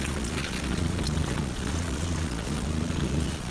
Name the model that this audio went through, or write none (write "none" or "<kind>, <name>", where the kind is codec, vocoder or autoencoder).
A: vocoder, Vocos